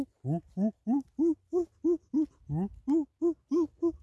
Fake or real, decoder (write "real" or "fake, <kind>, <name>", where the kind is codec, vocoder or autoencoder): real